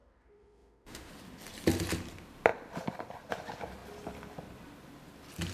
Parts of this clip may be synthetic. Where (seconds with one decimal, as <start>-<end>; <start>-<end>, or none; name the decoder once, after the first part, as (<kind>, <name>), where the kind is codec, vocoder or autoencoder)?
0.0-1.1 (autoencoder, DAC-VAE)